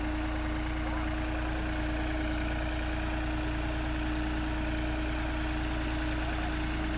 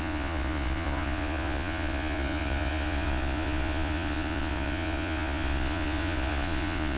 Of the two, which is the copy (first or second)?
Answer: second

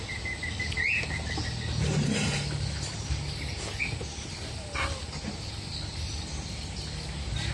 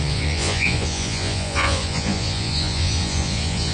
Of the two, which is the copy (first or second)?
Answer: second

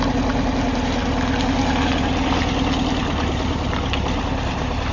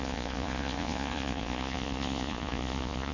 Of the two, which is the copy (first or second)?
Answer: second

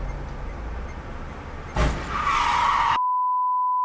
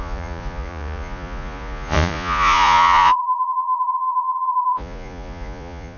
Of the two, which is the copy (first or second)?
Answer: second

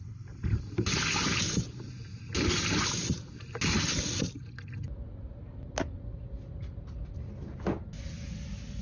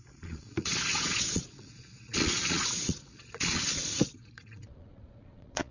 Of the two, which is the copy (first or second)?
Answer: second